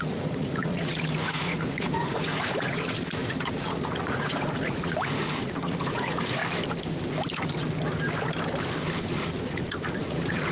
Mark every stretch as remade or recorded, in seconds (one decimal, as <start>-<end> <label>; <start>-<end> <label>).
0.0-6.4 remade; 6.4-9.0 recorded; 9.0-10.5 remade